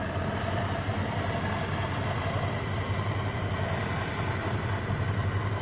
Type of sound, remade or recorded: remade